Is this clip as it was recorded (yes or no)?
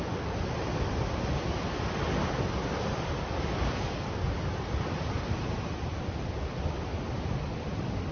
yes